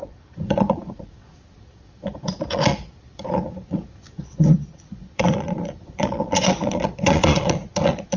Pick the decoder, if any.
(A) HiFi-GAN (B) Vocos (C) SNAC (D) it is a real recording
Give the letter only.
B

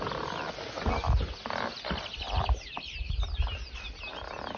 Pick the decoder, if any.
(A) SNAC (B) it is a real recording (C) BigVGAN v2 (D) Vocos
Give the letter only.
B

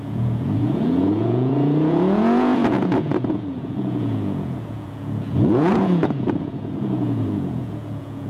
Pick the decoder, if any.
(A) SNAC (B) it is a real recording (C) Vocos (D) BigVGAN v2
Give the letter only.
C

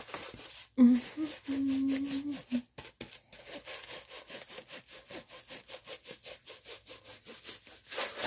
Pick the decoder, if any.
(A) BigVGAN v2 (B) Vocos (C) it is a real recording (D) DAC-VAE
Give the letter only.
C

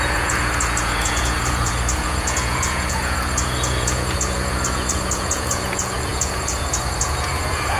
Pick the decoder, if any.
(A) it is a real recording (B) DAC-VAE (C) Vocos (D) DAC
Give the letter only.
C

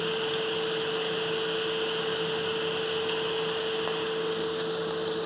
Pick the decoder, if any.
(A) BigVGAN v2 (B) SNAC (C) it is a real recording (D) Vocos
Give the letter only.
C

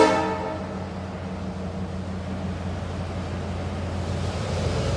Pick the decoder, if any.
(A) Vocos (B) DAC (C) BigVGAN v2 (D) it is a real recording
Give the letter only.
D